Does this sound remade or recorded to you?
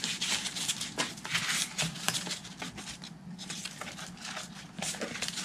recorded